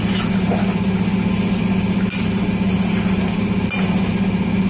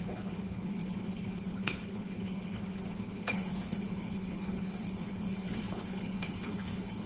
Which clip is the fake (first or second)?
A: second